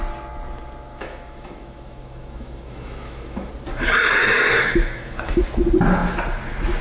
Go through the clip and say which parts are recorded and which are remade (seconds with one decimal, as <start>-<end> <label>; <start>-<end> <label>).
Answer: 0.0-0.9 recorded; 0.9-3.5 remade; 3.5-4.2 recorded; 4.2-5.4 remade; 5.4-6.8 recorded